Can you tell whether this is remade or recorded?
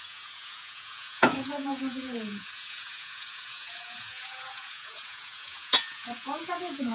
remade